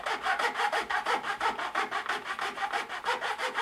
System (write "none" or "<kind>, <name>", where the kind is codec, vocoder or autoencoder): none